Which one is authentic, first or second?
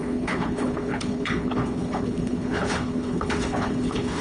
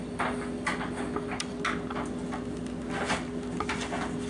second